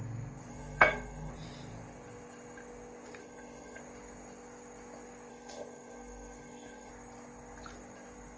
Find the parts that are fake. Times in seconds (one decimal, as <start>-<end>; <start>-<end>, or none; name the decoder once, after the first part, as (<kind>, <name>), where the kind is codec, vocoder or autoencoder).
0.5-1.3 (codec, SNAC); 3.2-3.8; 5.3-6.9